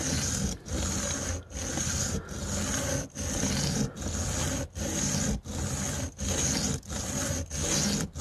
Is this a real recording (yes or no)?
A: yes